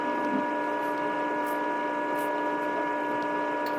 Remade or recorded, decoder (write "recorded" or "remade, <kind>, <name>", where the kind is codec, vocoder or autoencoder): recorded